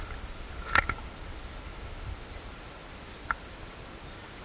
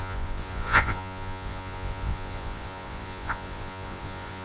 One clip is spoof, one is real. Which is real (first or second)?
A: first